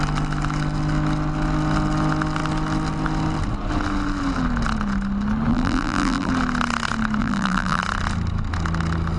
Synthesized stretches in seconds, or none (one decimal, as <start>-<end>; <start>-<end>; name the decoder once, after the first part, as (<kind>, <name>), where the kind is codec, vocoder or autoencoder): 5.5-6.3 (vocoder, BigVGAN v2); 7.2-7.8